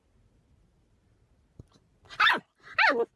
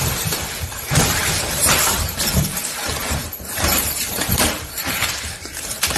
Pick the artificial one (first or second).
second